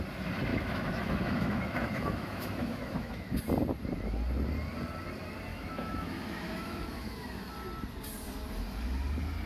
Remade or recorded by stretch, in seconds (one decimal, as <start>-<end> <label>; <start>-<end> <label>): 0.0-0.5 recorded; 0.5-3.4 remade; 3.4-5.5 recorded; 5.5-7.4 remade; 7.4-9.5 recorded